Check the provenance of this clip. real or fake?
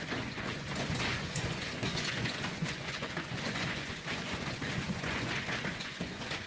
fake